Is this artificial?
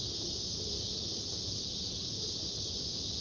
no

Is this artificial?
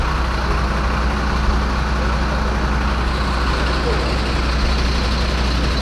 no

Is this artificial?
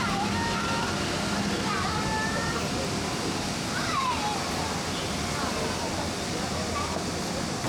no